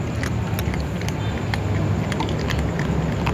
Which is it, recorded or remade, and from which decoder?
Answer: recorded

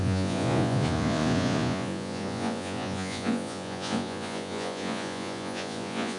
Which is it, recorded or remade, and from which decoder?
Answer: remade, vocoder, Vocos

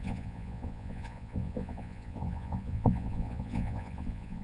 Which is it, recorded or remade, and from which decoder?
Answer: remade, vocoder, Vocos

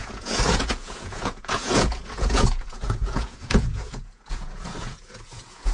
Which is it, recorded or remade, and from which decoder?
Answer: remade, vocoder, Vocos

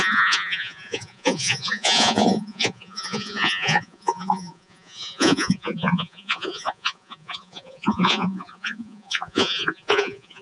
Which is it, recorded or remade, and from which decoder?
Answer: remade, vocoder, Vocos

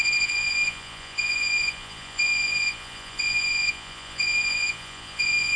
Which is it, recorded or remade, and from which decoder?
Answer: remade, vocoder, Vocos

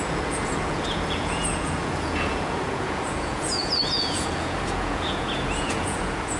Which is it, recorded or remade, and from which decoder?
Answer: remade, vocoder, Vocos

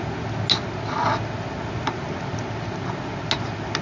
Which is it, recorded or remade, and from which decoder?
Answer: recorded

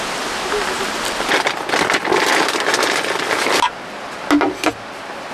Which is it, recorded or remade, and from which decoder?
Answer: recorded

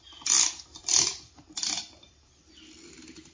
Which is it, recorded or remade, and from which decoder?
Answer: recorded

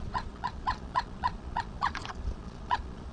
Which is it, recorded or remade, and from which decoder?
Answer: remade, vocoder, Vocos